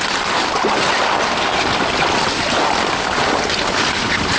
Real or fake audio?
real